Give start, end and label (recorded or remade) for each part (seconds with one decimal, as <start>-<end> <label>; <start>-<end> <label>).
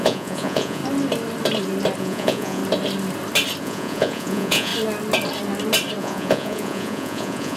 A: 0.0-0.8 remade; 0.8-2.0 recorded; 2.0-2.6 remade; 2.6-3.6 recorded; 3.6-4.7 remade; 4.7-6.0 recorded; 6.0-7.6 remade